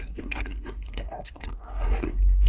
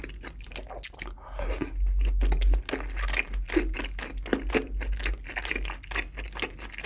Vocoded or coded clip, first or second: first